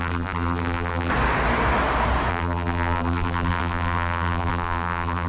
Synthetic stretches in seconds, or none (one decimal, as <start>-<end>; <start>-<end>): 0.0-1.1; 2.3-5.3